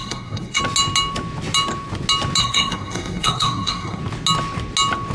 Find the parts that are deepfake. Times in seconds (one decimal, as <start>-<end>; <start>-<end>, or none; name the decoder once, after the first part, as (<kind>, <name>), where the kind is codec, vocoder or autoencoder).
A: 0.0-0.6 (codec, SNAC); 2.4-4.0